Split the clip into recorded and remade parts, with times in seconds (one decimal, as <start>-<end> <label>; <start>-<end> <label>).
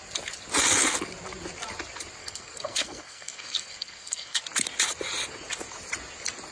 0.0-2.2 recorded; 2.2-4.4 remade; 4.4-6.5 recorded